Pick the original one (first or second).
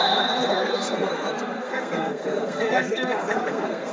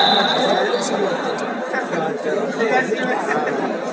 second